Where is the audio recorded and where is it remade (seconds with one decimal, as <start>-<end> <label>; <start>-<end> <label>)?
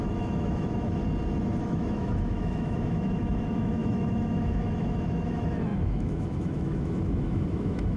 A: 0.0-1.0 remade; 1.0-1.6 recorded; 1.6-8.0 remade